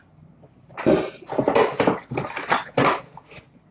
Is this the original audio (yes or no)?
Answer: yes